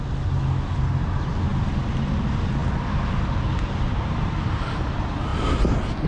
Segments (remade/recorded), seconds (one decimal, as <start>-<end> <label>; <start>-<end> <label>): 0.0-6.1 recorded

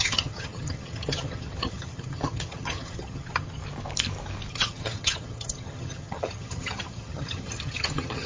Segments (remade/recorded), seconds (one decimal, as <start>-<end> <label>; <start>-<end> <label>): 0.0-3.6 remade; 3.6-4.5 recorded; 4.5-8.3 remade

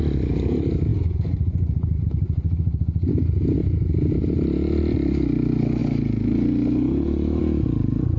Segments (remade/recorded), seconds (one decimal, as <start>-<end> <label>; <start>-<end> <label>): 0.0-0.9 recorded; 0.9-3.1 remade; 3.1-3.6 recorded; 3.6-4.7 remade; 4.7-5.8 recorded; 5.8-7.4 remade; 7.4-8.2 recorded

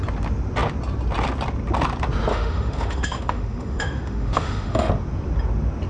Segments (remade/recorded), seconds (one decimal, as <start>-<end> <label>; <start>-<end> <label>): 0.0-2.3 recorded; 2.3-4.9 remade; 4.9-5.9 recorded